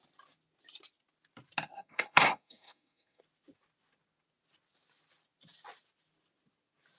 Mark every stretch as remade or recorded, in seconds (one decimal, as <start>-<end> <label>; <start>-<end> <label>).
0.0-1.7 recorded; 1.7-3.2 remade; 3.2-7.0 recorded